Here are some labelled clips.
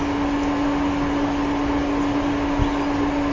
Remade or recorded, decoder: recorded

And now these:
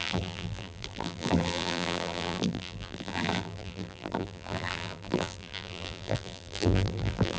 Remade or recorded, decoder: remade, vocoder, BigVGAN v2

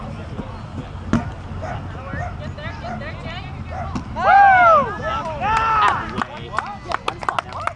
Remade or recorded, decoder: recorded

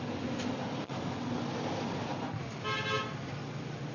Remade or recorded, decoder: recorded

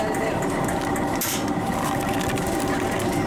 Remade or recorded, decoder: recorded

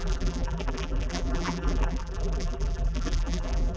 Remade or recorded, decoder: remade, vocoder, BigVGAN v2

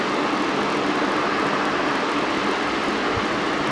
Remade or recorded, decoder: recorded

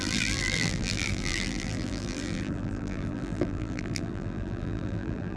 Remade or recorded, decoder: remade, vocoder, BigVGAN v2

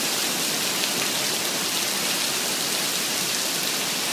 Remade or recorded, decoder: recorded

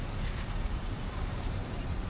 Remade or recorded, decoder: remade, vocoder, BigVGAN v2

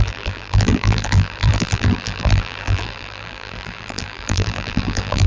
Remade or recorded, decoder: remade, vocoder, BigVGAN v2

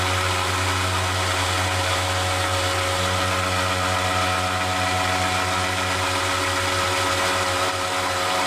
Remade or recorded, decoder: recorded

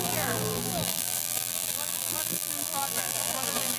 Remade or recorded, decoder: remade, vocoder, BigVGAN v2